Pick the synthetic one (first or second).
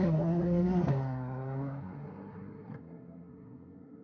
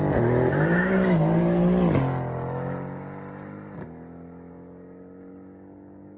first